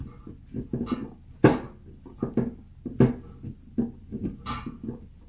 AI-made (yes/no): no